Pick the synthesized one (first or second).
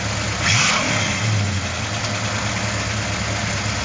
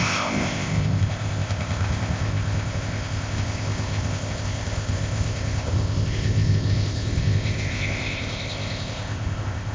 second